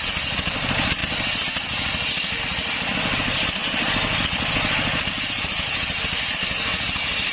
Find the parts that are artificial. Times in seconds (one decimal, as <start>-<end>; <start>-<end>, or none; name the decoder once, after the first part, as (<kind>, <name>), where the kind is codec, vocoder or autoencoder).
none